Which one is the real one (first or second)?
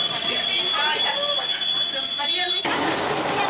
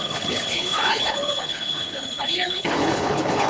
first